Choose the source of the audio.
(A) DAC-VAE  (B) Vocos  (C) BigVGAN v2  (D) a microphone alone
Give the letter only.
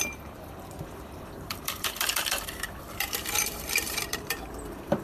C